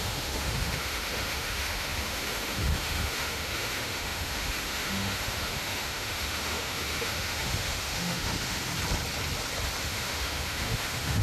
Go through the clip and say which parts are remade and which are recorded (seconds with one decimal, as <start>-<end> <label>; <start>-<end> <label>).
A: 0.0-8.7 remade; 8.7-9.8 recorded; 9.8-11.2 remade

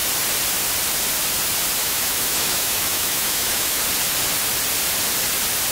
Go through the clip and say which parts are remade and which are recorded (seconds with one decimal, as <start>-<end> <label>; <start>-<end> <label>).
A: 0.0-1.8 recorded; 1.8-3.8 remade; 3.8-5.7 recorded

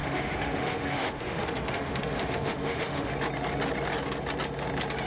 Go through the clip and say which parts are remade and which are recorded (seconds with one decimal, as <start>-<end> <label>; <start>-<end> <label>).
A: 0.0-3.1 remade; 3.1-5.1 recorded